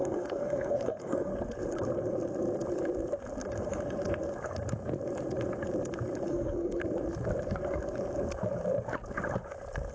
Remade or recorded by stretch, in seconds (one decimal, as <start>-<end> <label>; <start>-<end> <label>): 0.0-1.3 remade; 1.3-6.3 recorded; 6.3-6.8 remade; 6.8-9.9 recorded